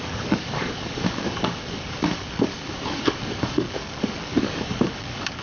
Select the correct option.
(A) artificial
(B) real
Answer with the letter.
A